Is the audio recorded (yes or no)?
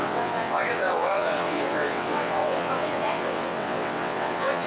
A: no